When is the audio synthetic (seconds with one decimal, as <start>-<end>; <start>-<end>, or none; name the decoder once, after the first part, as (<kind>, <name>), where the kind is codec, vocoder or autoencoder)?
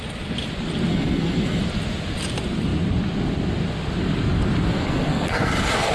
0.9-1.6 (codec, SNAC); 4.7-5.5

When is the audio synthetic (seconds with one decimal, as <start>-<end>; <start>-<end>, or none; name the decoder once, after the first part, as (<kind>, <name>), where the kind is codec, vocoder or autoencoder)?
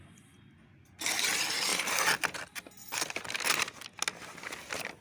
none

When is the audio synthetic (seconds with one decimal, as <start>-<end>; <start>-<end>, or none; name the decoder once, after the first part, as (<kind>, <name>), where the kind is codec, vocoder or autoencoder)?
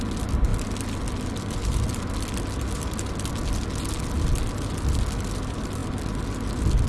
none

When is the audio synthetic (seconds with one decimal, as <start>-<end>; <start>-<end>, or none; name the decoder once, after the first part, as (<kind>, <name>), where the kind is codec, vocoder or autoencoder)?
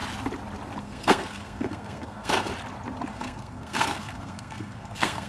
0.8-2.5 (codec, SNAC); 3.1-5.3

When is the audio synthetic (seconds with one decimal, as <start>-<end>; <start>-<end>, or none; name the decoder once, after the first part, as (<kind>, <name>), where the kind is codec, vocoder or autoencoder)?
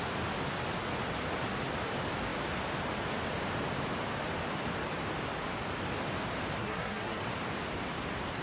6.6-7.2 (codec, SNAC)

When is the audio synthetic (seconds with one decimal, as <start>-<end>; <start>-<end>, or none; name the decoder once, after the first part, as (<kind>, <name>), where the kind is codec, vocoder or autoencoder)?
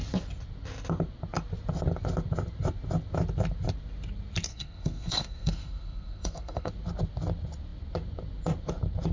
4.5-6.7 (codec, SNAC)